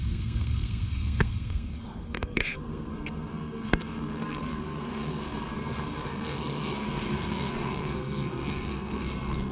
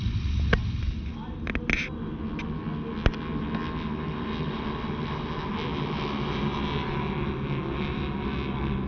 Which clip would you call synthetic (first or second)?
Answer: first